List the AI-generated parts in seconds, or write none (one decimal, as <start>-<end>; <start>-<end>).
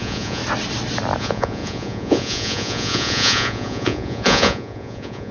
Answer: 0.0-0.4; 1.2-5.3